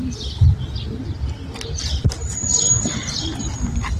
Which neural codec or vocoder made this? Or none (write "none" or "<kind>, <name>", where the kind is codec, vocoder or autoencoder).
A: none